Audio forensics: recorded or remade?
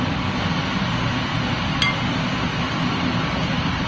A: recorded